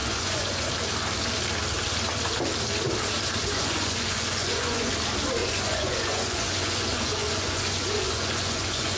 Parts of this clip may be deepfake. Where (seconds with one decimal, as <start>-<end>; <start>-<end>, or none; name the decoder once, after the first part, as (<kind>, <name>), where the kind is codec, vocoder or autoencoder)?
0.0-0.7 (vocoder, Vocos); 3.4-4.9; 5.4-9.0